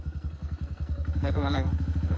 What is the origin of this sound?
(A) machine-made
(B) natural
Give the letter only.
A